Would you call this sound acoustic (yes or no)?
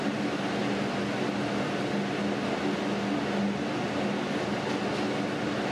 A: yes